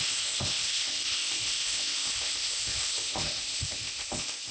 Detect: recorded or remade remade